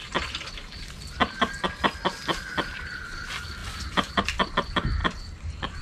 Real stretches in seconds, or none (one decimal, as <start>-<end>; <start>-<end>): 0.5-3.6; 4.5-5.8